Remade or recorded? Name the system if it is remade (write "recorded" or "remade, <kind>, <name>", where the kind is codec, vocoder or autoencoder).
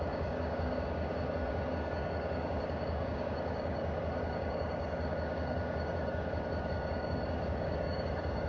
remade, codec, DAC